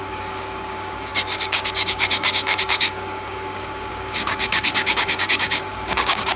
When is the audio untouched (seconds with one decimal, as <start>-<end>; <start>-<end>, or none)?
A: none